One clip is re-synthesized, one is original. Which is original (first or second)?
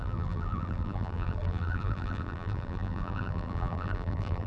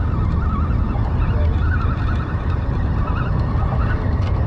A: second